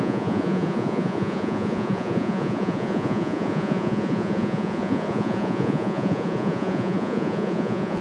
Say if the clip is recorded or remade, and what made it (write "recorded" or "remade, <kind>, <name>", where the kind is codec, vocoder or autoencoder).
remade, vocoder, Vocos